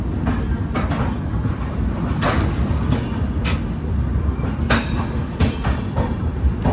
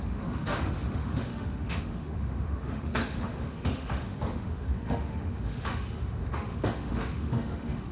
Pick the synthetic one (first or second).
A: second